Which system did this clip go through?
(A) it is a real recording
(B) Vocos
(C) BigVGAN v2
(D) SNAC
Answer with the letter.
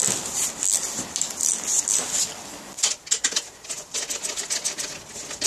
A